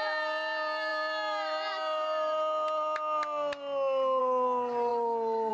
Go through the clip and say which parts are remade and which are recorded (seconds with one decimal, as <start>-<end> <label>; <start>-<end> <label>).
0.0-5.5 recorded